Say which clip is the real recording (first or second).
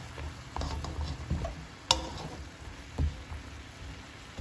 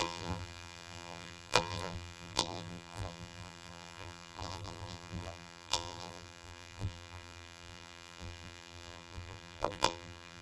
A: first